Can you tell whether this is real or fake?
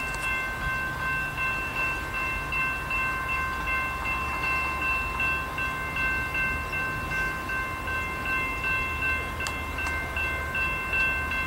real